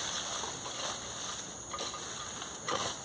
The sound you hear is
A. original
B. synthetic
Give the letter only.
A